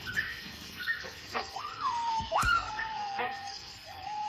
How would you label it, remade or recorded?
remade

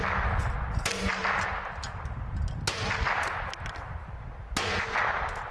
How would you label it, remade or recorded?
recorded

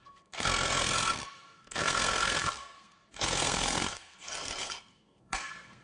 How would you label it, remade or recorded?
remade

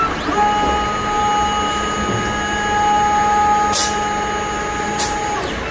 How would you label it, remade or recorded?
recorded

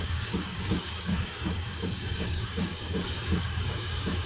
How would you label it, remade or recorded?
remade